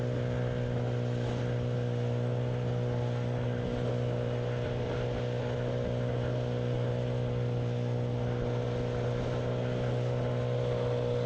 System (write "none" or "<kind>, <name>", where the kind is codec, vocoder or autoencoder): none